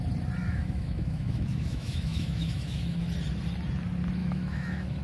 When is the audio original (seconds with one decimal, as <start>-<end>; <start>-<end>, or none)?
0.0-0.4; 3.1-4.2